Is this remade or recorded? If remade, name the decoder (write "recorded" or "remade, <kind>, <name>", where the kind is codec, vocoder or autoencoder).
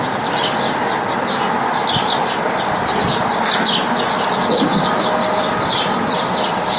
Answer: recorded